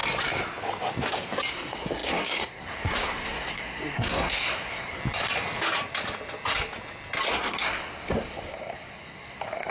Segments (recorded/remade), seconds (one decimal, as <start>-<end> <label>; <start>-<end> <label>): 0.0-1.5 recorded; 1.5-5.0 remade; 5.0-7.3 recorded; 7.3-9.7 remade